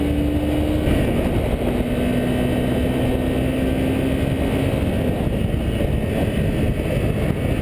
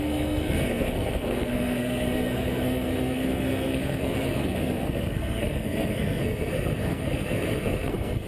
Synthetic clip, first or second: second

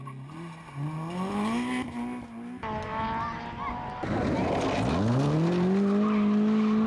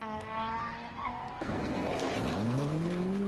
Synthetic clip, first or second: second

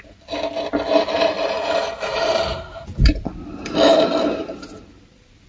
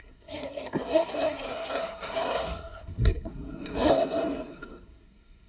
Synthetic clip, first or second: second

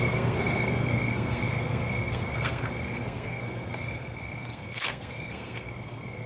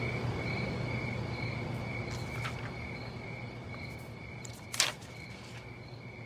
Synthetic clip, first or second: first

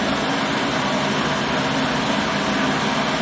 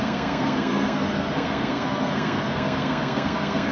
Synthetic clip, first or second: second